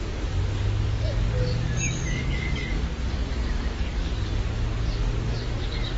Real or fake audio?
fake